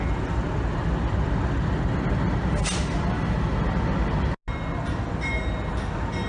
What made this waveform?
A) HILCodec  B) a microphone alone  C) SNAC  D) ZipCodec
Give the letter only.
B